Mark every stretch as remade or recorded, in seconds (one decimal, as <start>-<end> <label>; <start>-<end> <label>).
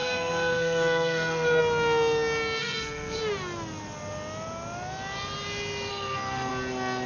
0.0-1.6 remade; 1.6-2.6 recorded; 2.6-3.2 remade; 3.2-5.9 recorded; 5.9-6.5 remade; 6.5-7.1 recorded